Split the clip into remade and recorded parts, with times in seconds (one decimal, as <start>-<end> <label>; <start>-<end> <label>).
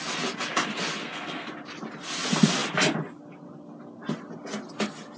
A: 0.0-1.0 recorded; 1.0-1.5 remade; 1.5-5.2 recorded